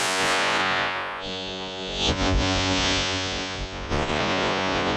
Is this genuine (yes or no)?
no